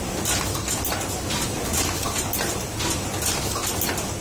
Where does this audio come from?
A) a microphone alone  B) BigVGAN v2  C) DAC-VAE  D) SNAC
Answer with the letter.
A